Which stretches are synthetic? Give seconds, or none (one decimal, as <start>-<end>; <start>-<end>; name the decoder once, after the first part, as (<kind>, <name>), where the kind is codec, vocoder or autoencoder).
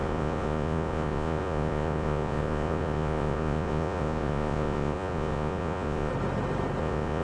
0.0-6.1 (vocoder, Vocos); 6.8-7.2